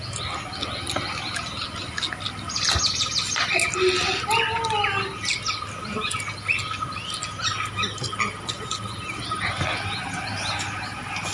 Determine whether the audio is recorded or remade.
recorded